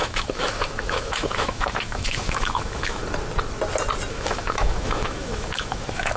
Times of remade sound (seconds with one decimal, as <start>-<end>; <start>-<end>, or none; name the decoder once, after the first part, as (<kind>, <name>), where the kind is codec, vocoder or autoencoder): 0.0-3.0 (autoencoder, DAC-VAE); 4.1-6.2